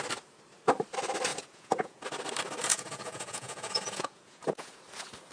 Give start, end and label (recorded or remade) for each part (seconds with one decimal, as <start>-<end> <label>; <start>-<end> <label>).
0.0-1.3 recorded; 1.3-2.0 remade; 2.0-2.7 recorded; 2.7-4.7 remade; 4.7-5.3 recorded